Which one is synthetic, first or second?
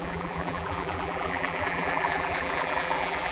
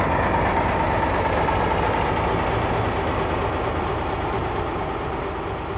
first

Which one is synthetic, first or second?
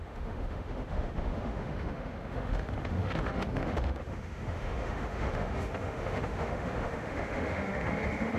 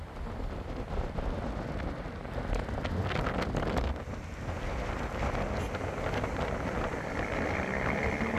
first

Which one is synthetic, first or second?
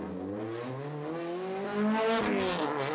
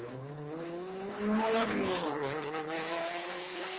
second